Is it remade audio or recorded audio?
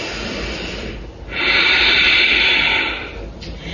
remade